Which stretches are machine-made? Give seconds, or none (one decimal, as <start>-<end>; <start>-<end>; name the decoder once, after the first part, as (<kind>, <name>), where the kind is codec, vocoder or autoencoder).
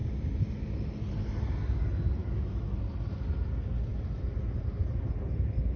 2.2-2.8 (autoencoder, DAC-VAE)